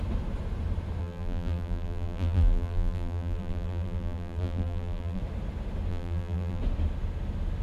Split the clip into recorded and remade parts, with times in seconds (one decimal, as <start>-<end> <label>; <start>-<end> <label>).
0.0-1.0 recorded; 1.0-5.2 remade; 5.2-5.9 recorded; 5.9-6.6 remade; 6.6-7.6 recorded